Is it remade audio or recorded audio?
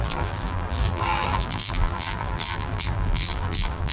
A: remade